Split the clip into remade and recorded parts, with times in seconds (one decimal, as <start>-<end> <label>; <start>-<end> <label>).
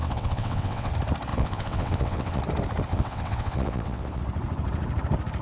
0.0-0.9 remade; 0.9-1.3 recorded; 1.3-2.4 remade; 2.4-2.9 recorded; 2.9-4.2 remade; 4.2-5.4 recorded